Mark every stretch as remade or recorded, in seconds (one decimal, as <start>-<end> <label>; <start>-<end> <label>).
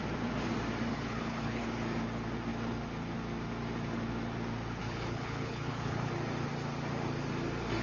0.0-0.9 recorded; 0.9-1.7 remade; 1.7-4.8 recorded; 4.8-6.1 remade; 6.1-7.8 recorded